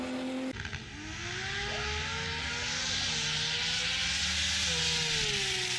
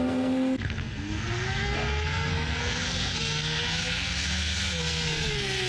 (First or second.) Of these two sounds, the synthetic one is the second